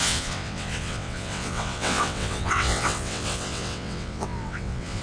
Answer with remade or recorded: remade